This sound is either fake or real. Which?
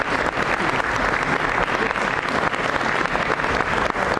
real